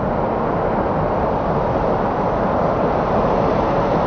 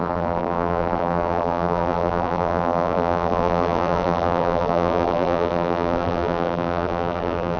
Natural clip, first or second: first